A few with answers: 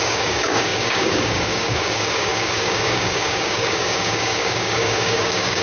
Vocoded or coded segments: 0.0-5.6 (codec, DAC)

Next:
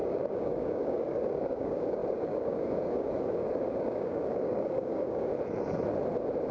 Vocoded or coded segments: 0.0-5.3 (codec, DAC)

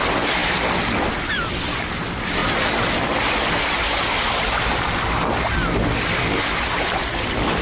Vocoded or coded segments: 0.0-0.4 (vocoder, BigVGAN v2); 1.3-2.4; 7.0-7.6

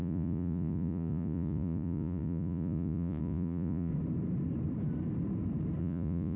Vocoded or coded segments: 0.0-3.9 (vocoder, Vocos); 5.8-6.4

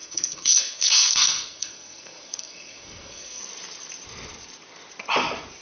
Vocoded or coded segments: 0.0-3.4 (codec, SNAC)

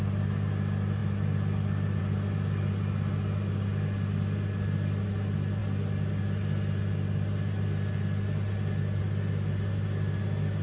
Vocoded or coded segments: none

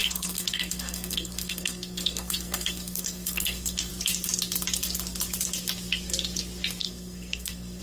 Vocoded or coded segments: 0.0-3.9 (codec, SNAC); 6.8-7.8

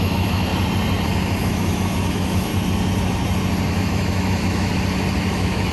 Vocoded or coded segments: 0.0-0.5 (autoencoder, DAC-VAE); 1.4-2.5; 3.7-4.7; 5.3-5.7